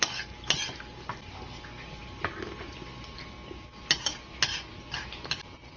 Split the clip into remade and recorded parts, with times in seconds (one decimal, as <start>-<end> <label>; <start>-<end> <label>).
0.0-5.8 recorded